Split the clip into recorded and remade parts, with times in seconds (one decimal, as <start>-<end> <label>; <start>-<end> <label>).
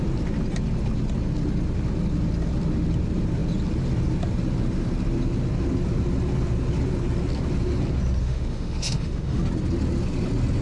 0.0-8.2 recorded; 8.2-9.4 remade; 9.4-10.6 recorded